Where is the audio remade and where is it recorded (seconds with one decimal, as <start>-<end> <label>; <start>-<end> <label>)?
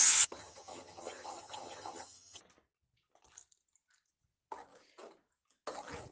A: 0.0-2.4 remade; 2.4-6.1 recorded